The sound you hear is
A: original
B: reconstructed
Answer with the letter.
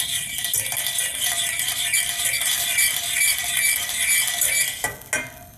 A